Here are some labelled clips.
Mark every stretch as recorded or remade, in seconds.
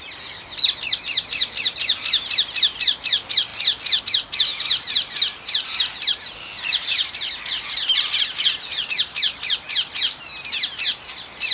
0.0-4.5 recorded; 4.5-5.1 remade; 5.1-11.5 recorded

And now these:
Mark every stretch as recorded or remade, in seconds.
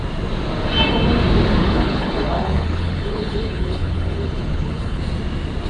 0.0-1.6 recorded; 1.6-5.0 remade; 5.0-5.7 recorded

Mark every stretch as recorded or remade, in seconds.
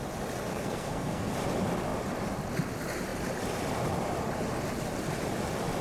0.0-0.5 recorded; 0.5-1.3 remade; 1.3-5.8 recorded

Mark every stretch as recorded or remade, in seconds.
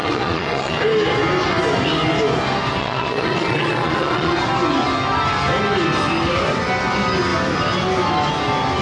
0.0-0.8 remade; 0.8-2.8 recorded; 2.8-4.3 remade; 4.3-8.8 recorded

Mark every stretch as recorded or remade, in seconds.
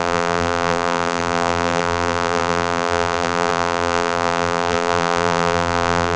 0.0-6.2 remade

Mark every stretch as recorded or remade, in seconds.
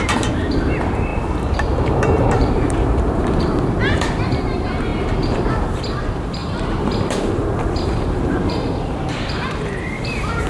0.0-10.5 remade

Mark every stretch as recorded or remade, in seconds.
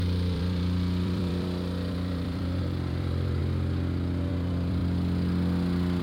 0.0-3.4 remade; 3.4-4.3 recorded; 4.3-4.8 remade; 4.8-6.0 recorded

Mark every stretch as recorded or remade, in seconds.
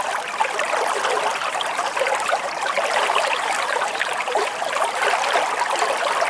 0.0-1.3 recorded; 1.3-5.0 remade; 5.0-6.3 recorded